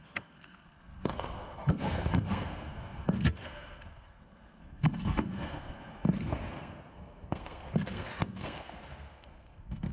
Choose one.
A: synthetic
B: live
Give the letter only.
A